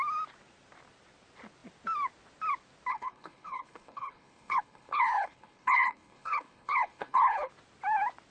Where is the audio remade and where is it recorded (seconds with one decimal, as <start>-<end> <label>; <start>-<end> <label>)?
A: 0.0-2.9 recorded; 2.9-7.5 remade; 7.5-8.3 recorded